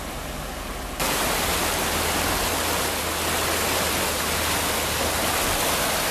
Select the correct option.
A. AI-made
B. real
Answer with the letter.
B